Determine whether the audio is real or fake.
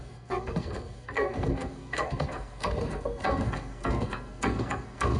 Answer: fake